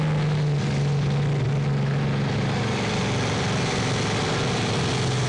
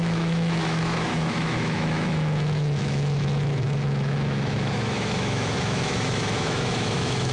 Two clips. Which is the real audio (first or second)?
first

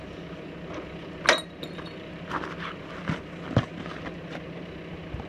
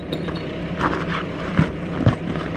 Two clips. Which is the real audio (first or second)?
first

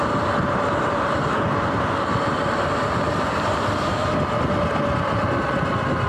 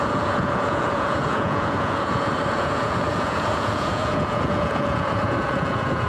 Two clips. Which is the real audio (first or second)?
first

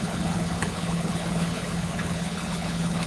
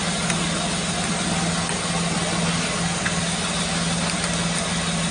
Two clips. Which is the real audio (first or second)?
second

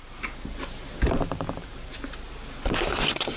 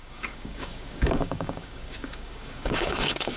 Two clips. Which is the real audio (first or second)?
first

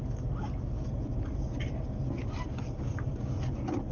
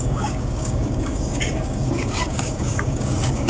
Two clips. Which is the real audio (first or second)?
first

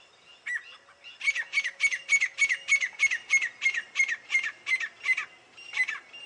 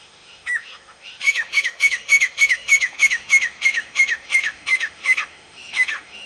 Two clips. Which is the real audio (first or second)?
first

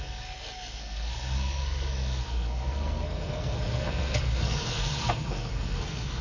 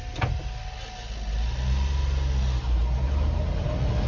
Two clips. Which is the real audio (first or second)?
second